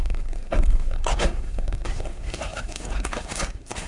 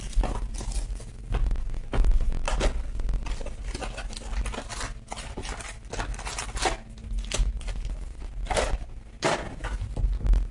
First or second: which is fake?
first